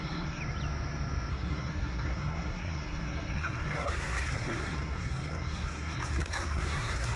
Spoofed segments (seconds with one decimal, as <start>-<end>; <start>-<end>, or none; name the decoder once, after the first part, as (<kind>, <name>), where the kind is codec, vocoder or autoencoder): 0.0-0.4 (codec, SNAC); 1.3-7.2